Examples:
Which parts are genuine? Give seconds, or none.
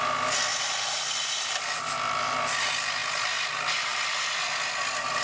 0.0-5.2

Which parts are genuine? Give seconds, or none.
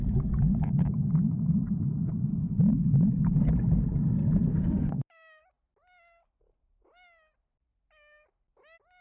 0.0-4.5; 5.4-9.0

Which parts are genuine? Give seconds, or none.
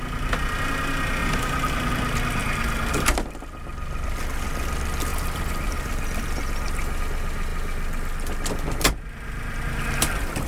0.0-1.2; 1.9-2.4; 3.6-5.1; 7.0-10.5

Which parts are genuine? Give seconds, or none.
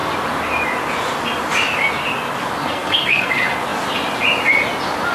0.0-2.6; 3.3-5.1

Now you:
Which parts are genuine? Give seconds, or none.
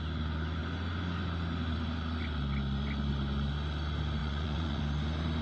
0.0-4.2; 4.8-5.4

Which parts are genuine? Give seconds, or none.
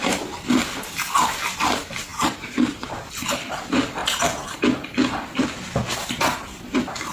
0.5-2.1; 3.0-5.8; 6.6-7.1